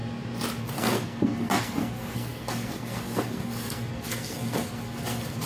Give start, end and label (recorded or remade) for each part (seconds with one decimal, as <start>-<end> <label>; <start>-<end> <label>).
0.0-0.6 recorded; 0.6-5.5 remade